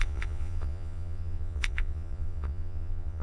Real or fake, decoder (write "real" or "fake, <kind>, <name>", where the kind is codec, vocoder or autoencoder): fake, vocoder, Vocos